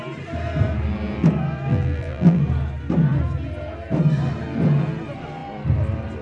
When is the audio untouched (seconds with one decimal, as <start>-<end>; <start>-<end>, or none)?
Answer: 0.0-1.7; 2.4-6.2